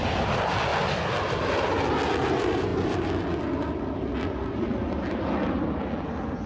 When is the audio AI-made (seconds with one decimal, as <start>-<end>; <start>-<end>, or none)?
none